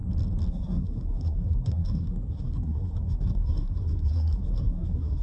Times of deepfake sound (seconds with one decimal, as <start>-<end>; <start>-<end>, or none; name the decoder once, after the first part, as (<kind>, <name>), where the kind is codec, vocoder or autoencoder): 0.5-5.2 (codec, SNAC)